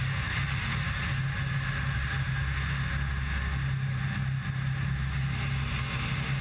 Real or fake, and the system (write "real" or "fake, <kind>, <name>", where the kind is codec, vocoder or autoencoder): real